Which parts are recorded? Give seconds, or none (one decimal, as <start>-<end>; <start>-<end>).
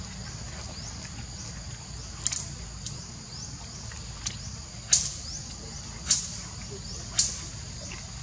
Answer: 0.0-5.4